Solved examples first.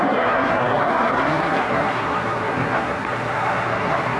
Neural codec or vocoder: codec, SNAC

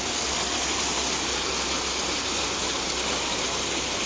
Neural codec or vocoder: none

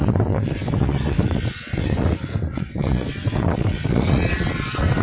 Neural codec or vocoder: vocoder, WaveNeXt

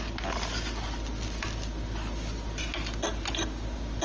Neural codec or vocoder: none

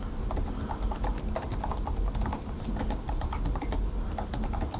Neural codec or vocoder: none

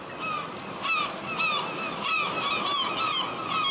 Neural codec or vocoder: none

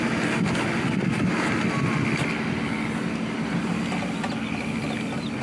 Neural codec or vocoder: none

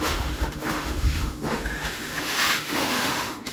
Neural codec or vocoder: autoencoder, DAC-VAE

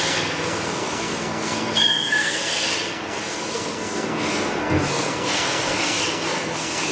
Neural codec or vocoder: codec, SNAC